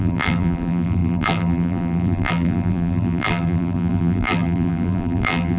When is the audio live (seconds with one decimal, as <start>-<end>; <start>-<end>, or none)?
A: none